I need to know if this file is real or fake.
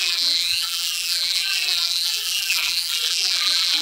fake